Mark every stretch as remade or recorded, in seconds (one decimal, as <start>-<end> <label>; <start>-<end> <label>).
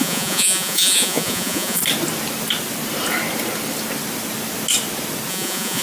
0.0-1.8 remade; 1.8-5.3 recorded; 5.3-5.8 remade